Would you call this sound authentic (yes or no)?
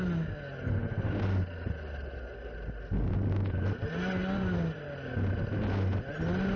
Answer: yes